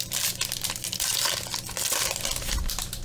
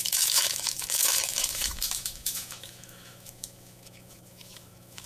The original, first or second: first